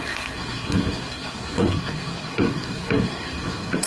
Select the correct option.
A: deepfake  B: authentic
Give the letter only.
A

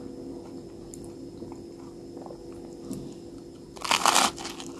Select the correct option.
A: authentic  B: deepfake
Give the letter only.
A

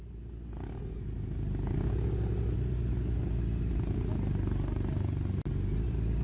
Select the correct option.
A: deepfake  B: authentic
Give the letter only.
B